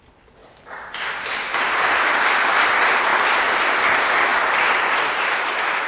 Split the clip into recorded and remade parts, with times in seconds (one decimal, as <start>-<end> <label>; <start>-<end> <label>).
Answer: 0.0-4.3 recorded; 4.3-4.9 remade; 4.9-5.9 recorded